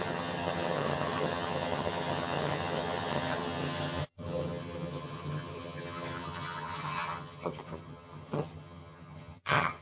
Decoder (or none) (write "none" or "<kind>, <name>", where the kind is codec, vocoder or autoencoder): vocoder, HiFi-GAN